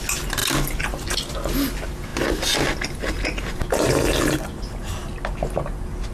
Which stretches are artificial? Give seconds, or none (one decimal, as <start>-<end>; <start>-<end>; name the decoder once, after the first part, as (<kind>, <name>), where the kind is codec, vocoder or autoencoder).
none